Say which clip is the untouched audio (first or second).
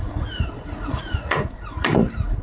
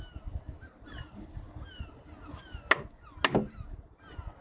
second